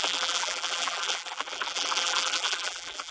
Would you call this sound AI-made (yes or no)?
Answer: yes